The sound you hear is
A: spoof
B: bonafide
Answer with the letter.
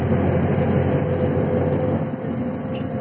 B